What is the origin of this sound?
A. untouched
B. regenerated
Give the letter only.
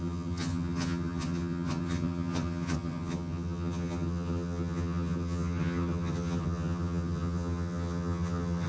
B